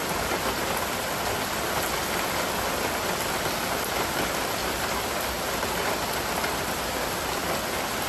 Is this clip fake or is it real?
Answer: real